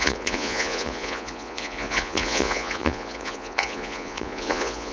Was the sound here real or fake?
fake